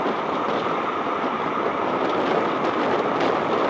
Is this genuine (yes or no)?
yes